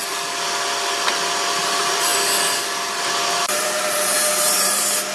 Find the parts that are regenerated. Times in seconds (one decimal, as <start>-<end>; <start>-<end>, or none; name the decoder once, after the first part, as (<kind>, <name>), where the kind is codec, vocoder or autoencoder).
1.6-2.1 (vocoder, BigVGAN v2); 3.3-5.1

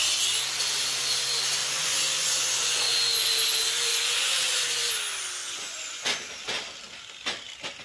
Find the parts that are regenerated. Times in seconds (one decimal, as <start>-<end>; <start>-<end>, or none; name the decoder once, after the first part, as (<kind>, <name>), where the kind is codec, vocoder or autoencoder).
1.6-3.2 (vocoder, Vocos); 3.9-4.9; 5.4-6.2

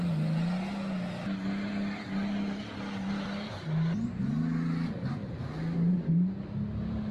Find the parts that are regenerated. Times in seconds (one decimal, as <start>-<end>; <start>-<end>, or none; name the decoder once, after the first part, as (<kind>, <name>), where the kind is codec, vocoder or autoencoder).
none

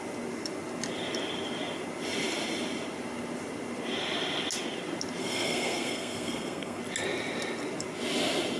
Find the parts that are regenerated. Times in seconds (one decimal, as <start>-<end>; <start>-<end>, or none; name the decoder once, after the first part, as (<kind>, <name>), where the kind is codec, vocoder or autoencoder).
5.2-6.8 (codec, SNAC)

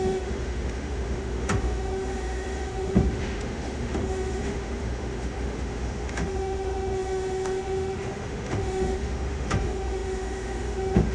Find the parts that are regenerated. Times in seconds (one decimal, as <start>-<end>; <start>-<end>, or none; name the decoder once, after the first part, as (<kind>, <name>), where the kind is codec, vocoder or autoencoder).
0.0-11.1 (autoencoder, DAC-VAE)